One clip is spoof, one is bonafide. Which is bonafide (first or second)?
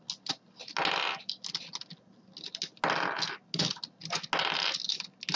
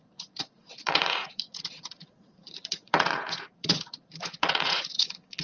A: first